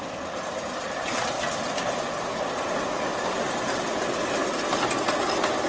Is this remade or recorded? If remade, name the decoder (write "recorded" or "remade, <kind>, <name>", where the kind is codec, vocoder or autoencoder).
recorded